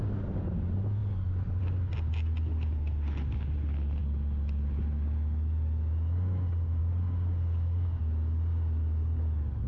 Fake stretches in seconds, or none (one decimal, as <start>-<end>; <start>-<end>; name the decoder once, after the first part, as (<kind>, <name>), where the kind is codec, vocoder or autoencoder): none